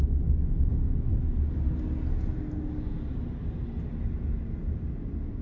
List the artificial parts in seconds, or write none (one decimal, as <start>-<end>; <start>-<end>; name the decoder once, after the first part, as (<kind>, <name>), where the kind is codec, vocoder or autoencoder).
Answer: none